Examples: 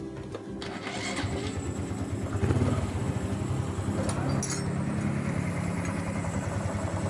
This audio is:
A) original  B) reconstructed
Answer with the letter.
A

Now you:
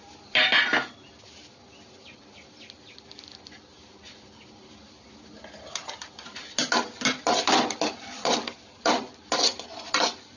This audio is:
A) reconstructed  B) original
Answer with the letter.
B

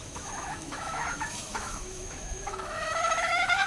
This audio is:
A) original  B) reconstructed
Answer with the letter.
B